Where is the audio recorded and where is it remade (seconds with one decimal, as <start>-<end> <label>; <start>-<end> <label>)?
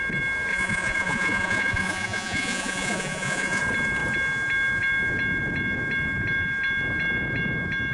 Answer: 0.0-0.5 recorded; 0.5-3.6 remade; 3.6-7.9 recorded